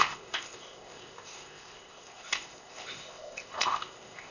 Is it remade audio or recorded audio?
remade